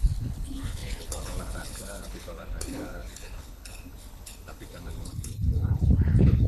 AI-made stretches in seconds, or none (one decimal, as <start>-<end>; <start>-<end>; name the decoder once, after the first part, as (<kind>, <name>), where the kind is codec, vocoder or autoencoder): 0.0-6.5 (codec, HILCodec)

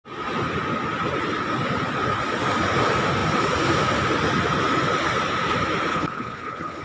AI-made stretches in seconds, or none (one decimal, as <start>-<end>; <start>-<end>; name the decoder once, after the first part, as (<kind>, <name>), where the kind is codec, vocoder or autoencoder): 5.9-6.8 (codec, HILCodec)

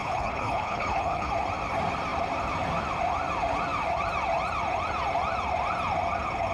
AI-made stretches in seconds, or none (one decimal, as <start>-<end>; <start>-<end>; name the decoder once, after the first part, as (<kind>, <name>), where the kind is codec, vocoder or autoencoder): 0.0-1.3 (codec, HILCodec)